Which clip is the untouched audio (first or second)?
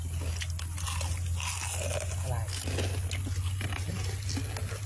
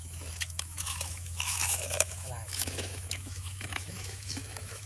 first